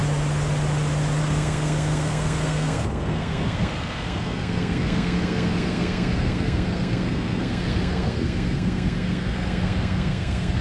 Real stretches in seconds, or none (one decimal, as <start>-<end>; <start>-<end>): 0.0-1.2